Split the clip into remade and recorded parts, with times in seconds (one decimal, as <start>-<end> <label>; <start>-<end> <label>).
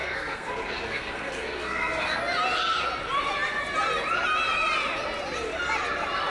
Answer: 0.0-2.2 remade; 2.2-6.3 recorded